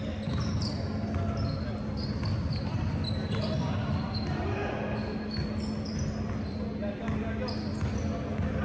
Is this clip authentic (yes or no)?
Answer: yes